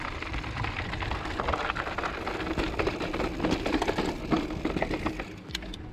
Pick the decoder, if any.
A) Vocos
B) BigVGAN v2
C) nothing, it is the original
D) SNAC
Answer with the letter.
B